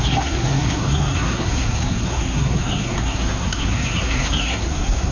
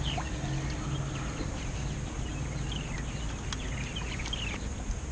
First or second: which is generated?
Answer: first